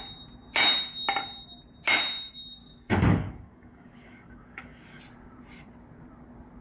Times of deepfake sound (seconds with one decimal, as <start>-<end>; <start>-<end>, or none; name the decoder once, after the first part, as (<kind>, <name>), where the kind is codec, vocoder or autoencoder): 2.6-5.0 (codec, DAC)